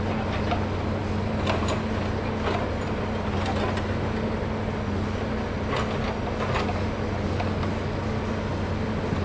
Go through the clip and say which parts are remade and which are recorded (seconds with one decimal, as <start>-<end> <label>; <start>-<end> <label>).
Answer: 0.0-9.2 recorded

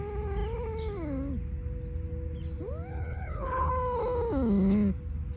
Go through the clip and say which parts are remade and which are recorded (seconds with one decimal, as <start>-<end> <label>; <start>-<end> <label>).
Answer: 0.0-2.9 recorded; 2.9-3.7 remade; 3.7-5.4 recorded